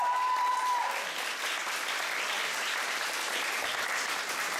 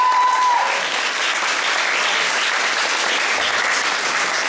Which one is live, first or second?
second